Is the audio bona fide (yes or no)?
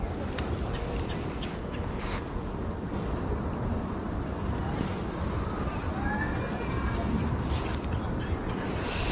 yes